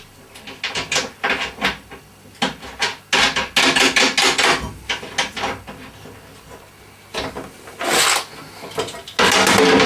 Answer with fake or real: real